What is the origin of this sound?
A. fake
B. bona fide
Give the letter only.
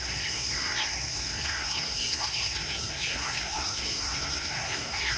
A